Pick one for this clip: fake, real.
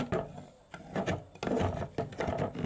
real